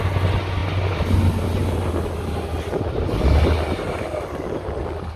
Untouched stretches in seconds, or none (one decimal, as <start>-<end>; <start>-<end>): 0.0-5.2